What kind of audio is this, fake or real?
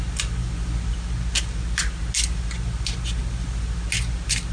real